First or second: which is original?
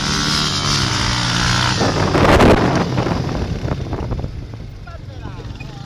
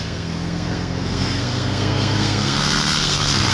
first